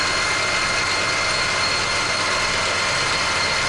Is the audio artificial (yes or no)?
no